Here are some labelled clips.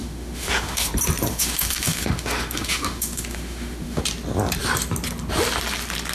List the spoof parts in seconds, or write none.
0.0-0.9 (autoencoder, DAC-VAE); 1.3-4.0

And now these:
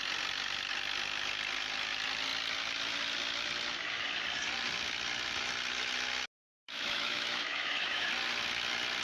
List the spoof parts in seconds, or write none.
6.6-8.1 (autoencoder, DAC-VAE)

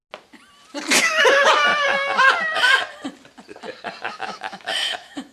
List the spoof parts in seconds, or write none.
1.0-1.7 (autoencoder, DAC-VAE); 4.1-5.3

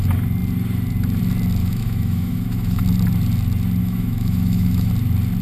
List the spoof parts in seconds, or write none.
1.6-2.8 (autoencoder, DAC-VAE); 3.8-4.9

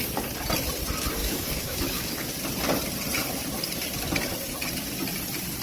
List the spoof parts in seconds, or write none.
1.2-2.3 (autoencoder, DAC-VAE)

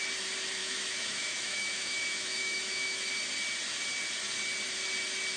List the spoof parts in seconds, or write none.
0.6-3.1 (autoencoder, DAC-VAE)

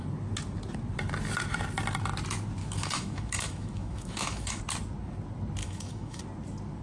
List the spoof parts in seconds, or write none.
2.6-4.6 (autoencoder, DAC-VAE); 5.6-6.2

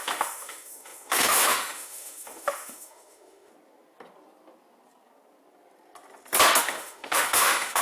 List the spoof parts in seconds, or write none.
0.0-3.5 (autoencoder, DAC-VAE); 6.6-7.8